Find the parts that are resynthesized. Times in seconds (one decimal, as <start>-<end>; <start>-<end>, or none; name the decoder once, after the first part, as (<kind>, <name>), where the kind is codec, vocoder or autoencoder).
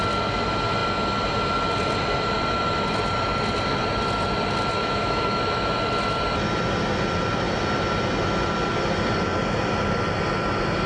4.8-5.4 (autoencoder, DAC-VAE)